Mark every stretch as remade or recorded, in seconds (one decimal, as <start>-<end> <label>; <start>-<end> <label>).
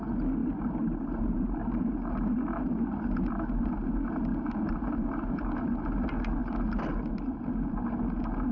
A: 0.0-0.4 recorded; 0.4-3.7 remade; 3.7-4.3 recorded; 4.3-5.8 remade; 5.8-8.5 recorded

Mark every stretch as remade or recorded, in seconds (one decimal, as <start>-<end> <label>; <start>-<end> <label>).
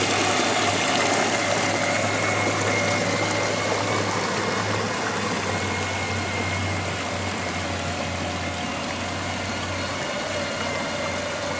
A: 0.0-11.6 recorded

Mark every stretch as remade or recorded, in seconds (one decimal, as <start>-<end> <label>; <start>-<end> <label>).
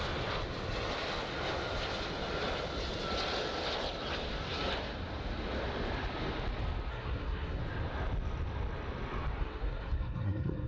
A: 0.0-6.9 recorded; 6.9-7.6 remade; 7.6-9.4 recorded; 9.4-10.7 remade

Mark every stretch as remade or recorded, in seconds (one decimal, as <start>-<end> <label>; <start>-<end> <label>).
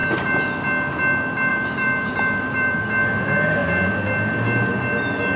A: 0.0-1.5 recorded; 1.5-2.8 remade; 2.8-5.4 recorded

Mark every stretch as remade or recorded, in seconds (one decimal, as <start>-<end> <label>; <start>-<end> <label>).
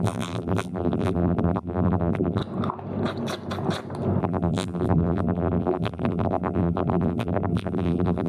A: 0.0-2.4 remade; 2.4-4.2 recorded; 4.2-8.3 remade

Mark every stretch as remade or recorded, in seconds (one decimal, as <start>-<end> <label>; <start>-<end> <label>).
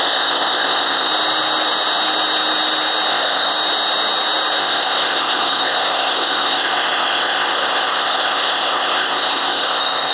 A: 0.0-1.1 remade; 1.1-3.1 recorded; 3.1-3.5 remade; 3.5-4.6 recorded; 4.6-10.1 remade